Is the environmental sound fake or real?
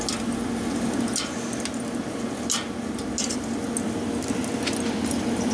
real